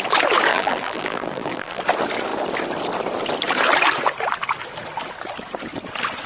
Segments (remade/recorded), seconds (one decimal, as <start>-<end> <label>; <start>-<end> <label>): 0.0-0.5 recorded; 0.5-1.8 remade; 1.8-6.3 recorded

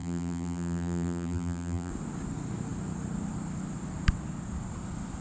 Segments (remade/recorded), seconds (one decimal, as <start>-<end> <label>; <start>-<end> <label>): 0.0-1.9 remade; 1.9-5.2 recorded

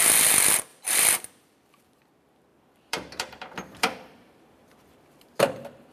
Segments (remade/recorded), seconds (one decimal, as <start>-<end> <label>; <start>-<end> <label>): 0.0-0.7 recorded; 0.7-2.0 remade; 2.0-2.5 recorded; 2.5-5.9 remade

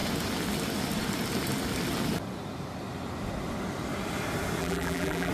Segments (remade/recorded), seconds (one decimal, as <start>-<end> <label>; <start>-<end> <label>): 0.0-4.6 recorded; 4.6-5.3 remade

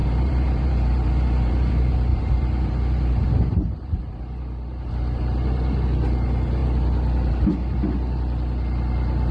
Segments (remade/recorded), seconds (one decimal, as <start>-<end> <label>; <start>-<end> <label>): 0.0-1.7 remade; 1.7-2.1 recorded; 2.1-4.9 remade; 4.9-9.3 recorded

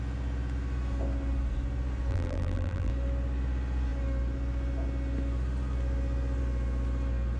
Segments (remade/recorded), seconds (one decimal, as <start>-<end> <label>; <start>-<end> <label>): 0.0-2.1 recorded; 2.1-2.9 remade; 2.9-7.4 recorded

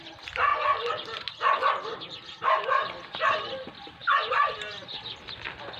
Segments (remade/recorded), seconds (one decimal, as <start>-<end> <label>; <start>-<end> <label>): 0.0-5.8 recorded